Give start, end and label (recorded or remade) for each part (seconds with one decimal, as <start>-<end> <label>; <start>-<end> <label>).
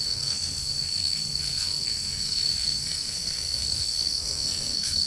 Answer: 0.0-5.1 remade